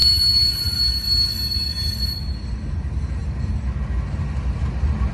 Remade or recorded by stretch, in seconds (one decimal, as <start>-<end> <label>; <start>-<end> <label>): 0.0-5.1 recorded